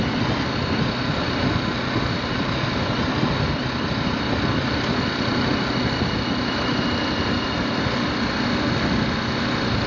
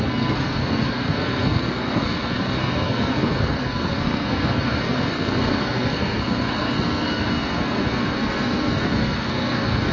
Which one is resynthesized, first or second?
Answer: second